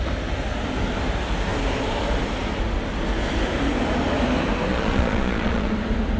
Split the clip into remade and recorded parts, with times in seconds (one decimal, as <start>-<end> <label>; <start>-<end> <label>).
0.0-4.7 recorded; 4.7-5.7 remade; 5.7-6.2 recorded